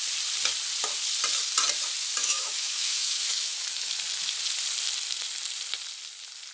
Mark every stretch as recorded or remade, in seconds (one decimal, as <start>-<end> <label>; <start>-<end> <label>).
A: 0.0-2.2 recorded; 2.2-3.9 remade; 3.9-6.5 recorded